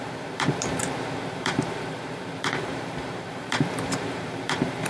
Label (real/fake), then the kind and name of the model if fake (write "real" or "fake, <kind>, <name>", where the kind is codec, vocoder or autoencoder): fake, vocoder, BigVGAN v2